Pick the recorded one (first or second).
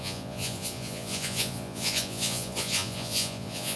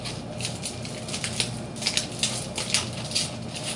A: second